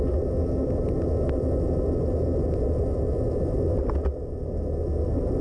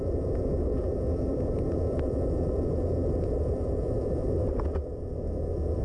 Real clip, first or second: first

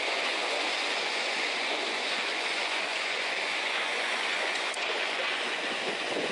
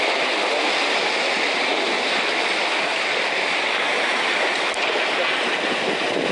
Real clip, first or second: second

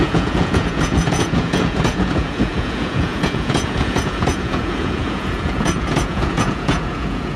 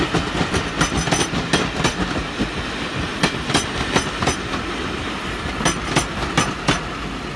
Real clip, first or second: second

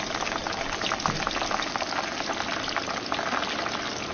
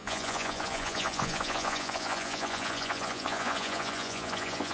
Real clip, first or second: first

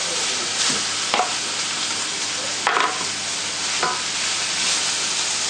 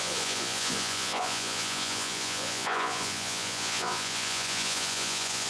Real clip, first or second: first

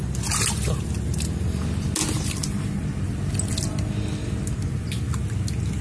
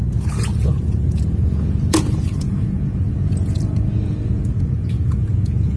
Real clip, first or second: first